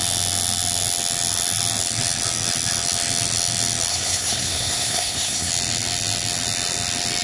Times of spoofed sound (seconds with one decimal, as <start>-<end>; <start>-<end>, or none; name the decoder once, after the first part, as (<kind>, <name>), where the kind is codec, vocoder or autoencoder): 3.9-5.5 (codec, SNAC)